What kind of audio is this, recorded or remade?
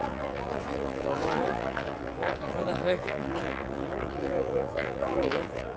remade